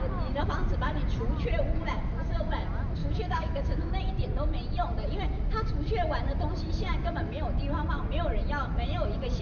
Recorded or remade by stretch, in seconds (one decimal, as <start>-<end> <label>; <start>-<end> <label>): 0.0-3.0 recorded; 3.0-3.9 remade; 3.9-9.4 recorded